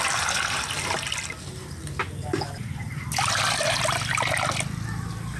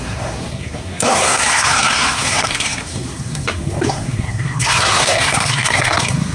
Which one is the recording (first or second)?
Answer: first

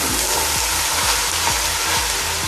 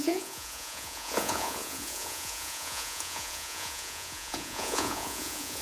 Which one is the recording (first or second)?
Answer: first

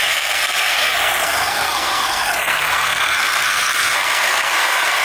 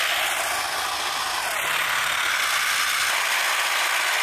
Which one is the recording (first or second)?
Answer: second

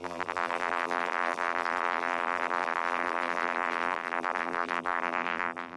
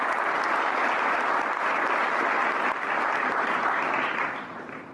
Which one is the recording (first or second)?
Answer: second